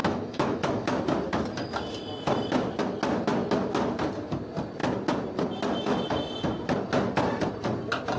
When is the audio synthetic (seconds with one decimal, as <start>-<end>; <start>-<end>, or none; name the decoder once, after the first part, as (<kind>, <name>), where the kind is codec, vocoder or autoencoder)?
0.0-1.0 (autoencoder, DAC-VAE)